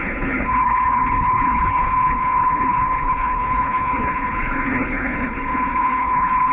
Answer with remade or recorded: remade